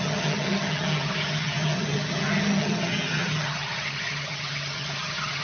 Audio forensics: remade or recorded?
remade